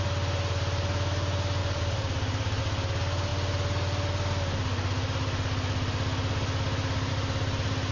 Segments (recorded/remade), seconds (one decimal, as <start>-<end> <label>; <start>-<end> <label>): 0.0-1.6 recorded; 1.6-2.6 remade; 2.6-7.9 recorded